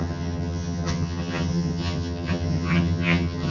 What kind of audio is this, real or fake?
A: fake